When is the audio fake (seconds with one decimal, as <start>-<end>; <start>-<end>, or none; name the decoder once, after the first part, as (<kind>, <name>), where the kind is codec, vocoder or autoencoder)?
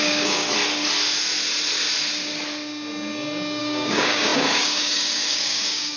0.0-0.5 (codec, DAC); 3.6-6.0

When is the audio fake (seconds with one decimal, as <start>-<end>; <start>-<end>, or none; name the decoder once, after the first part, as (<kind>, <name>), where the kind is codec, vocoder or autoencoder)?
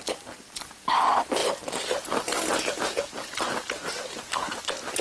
none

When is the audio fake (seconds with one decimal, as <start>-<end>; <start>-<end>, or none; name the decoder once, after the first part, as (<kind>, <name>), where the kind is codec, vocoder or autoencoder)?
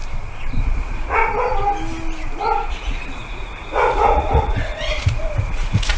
0.6-1.2 (vocoder, Vocos); 2.7-6.0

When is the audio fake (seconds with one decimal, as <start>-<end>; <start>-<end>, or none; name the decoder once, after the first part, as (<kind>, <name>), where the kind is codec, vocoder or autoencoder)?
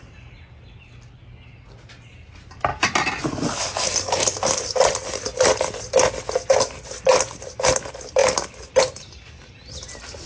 none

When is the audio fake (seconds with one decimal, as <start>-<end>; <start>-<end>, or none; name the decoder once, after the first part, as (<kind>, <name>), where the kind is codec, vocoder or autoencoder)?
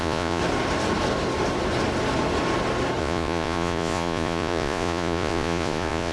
0.0-0.4 (vocoder, Vocos); 3.0-6.1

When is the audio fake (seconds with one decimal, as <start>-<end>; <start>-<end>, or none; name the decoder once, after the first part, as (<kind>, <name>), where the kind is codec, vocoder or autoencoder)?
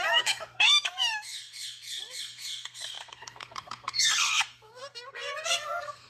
0.0-6.1 (codec, SNAC)